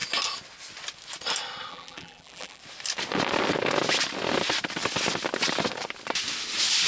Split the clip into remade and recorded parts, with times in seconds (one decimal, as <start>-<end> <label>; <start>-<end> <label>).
0.0-1.7 recorded; 1.7-2.6 remade; 2.6-6.9 recorded

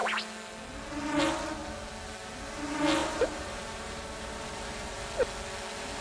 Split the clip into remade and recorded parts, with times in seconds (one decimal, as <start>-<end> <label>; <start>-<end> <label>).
0.0-3.0 recorded; 3.0-5.0 remade; 5.0-6.0 recorded